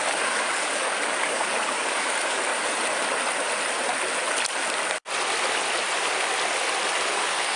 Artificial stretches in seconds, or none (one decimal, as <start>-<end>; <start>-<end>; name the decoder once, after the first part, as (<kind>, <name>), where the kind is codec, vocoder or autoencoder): 0.0-2.5 (codec, DAC); 7.1-7.6